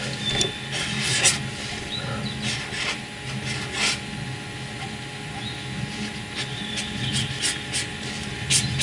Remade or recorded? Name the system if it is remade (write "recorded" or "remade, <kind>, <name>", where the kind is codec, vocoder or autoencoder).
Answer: recorded